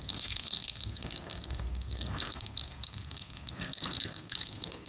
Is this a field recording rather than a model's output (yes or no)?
no